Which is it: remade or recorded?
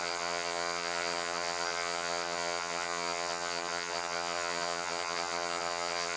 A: remade